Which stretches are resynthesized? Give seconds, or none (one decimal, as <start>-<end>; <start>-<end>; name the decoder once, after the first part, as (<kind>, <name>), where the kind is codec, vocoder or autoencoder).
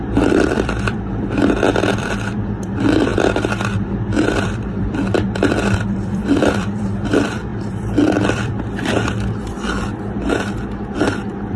0.0-11.6 (vocoder, BigVGAN v2)